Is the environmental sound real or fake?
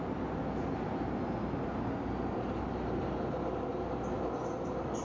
real